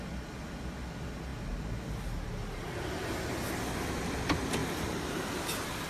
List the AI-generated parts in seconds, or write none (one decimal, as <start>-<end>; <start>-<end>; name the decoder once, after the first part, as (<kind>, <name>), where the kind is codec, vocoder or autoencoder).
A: 4.6-5.4 (vocoder, BigVGAN v2)